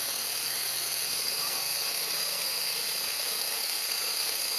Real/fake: fake